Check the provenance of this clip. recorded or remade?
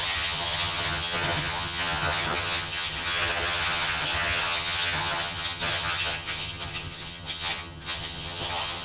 remade